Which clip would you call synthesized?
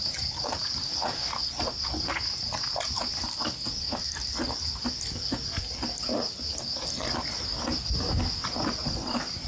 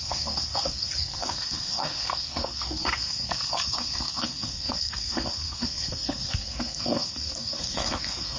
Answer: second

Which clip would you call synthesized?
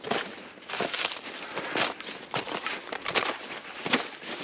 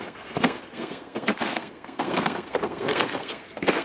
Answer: second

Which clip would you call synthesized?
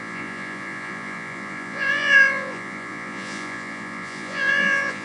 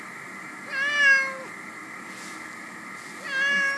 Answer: first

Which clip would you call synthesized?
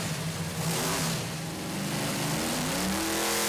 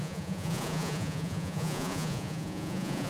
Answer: second